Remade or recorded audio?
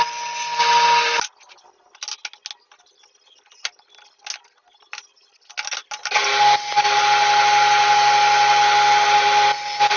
recorded